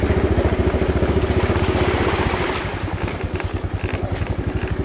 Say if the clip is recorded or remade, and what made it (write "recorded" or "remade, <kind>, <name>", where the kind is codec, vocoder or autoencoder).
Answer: recorded